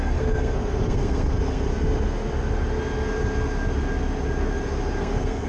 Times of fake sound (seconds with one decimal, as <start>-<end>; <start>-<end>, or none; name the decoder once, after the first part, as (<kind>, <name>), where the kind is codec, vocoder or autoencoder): 0.0-1.7 (codec, SNAC); 5.0-5.5

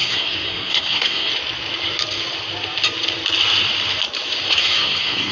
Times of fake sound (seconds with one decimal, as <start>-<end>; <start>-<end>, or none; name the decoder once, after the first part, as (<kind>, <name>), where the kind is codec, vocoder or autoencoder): 0.0-1.3 (codec, SNAC); 4.5-5.3

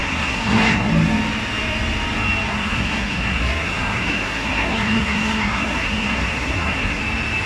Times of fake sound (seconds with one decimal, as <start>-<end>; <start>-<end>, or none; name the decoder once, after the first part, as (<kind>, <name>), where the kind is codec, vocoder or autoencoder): 0.0-0.9 (codec, SNAC); 2.5-7.0